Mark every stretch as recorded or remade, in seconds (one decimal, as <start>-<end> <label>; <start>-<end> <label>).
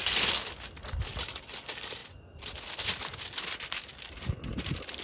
0.0-5.0 recorded